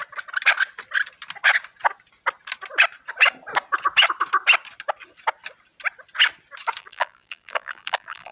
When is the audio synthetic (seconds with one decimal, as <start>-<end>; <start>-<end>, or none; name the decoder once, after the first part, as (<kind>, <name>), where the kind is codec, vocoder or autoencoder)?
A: 6.8-8.3 (vocoder, BigVGAN v2)